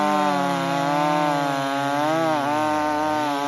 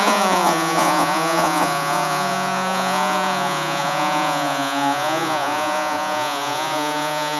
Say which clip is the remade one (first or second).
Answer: second